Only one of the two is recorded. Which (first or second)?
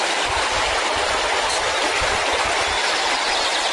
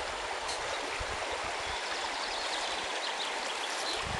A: second